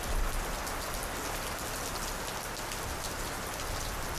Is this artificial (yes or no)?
no